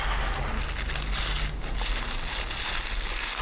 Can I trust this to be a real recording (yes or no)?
yes